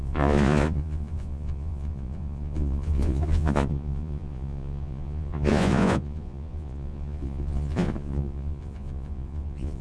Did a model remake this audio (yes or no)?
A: yes